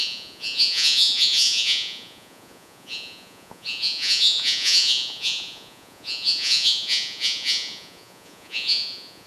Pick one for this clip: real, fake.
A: fake